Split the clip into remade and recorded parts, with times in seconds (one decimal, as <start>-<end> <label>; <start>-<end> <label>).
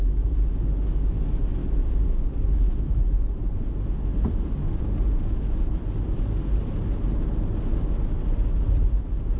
0.0-9.4 recorded